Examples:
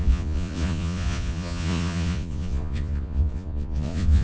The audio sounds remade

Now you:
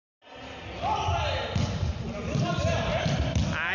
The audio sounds recorded